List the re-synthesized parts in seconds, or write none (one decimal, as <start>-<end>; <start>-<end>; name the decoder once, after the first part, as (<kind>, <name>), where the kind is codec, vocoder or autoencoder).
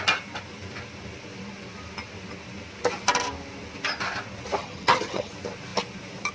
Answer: 4.6-5.3 (vocoder, HiFi-GAN)